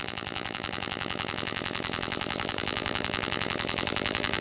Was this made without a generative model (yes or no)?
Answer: no